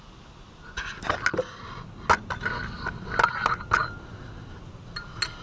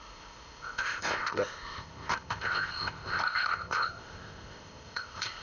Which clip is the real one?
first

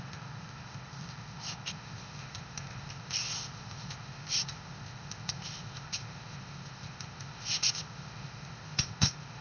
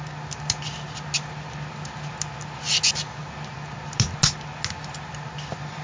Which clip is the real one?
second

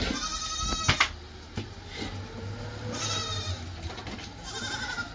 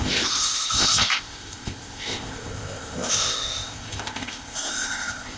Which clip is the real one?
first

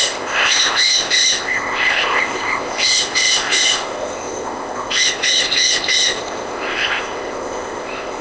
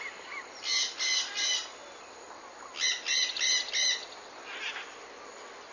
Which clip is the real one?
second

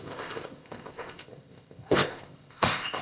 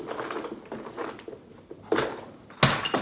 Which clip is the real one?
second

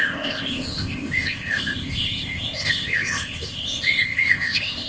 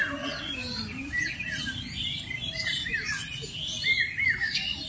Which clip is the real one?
second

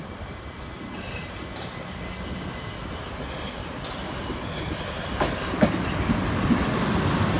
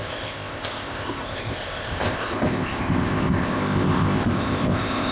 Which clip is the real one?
first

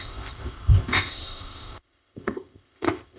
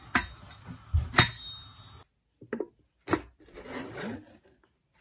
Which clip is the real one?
second